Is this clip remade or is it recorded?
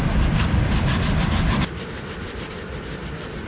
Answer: recorded